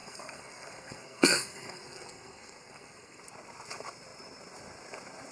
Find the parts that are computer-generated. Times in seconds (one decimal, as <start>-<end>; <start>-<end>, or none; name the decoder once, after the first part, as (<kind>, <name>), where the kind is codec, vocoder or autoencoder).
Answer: 0.0-3.2 (codec, SNAC)